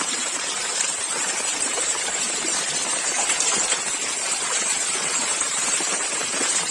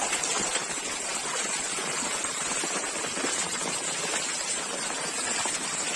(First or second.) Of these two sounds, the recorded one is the second